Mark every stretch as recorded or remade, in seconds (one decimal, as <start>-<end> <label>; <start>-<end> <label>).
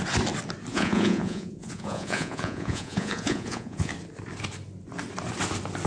0.0-0.7 recorded; 0.7-3.9 remade; 3.9-5.9 recorded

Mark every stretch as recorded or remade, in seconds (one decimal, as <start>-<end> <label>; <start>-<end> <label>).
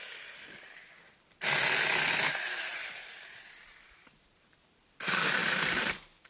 0.0-2.7 recorded; 2.7-4.8 remade; 4.8-5.4 recorded; 5.4-6.3 remade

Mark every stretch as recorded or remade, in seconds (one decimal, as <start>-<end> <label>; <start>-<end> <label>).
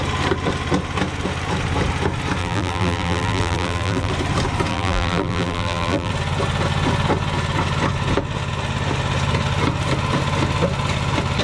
0.0-2.4 recorded; 2.4-4.1 remade; 4.1-4.7 recorded; 4.7-6.1 remade; 6.1-11.4 recorded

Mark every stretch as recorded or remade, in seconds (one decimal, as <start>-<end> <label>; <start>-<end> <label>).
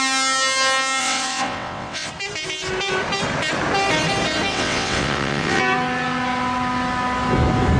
0.0-1.0 recorded; 1.0-2.1 remade; 2.1-4.5 recorded; 4.5-5.6 remade; 5.6-7.8 recorded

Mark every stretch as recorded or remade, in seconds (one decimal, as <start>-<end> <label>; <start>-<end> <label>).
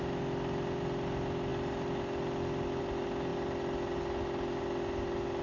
0.0-5.4 recorded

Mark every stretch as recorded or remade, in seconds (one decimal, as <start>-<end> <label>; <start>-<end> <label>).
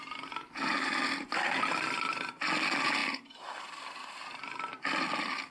0.0-5.5 recorded